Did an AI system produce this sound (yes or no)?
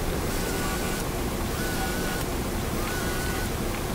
no